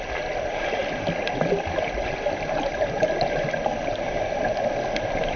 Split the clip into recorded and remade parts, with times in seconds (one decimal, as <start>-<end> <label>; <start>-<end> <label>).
0.0-5.4 recorded